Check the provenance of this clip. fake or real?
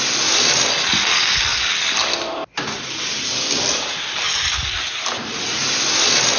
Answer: real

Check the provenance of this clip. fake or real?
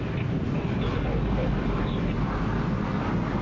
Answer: real